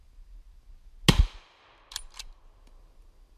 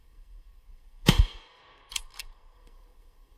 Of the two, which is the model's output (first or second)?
second